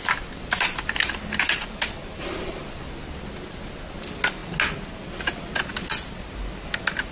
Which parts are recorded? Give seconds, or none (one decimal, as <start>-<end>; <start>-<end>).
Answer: 0.0-7.1